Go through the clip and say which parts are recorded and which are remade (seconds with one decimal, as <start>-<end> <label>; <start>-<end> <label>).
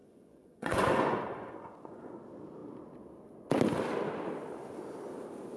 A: 0.0-2.1 remade; 2.1-5.6 recorded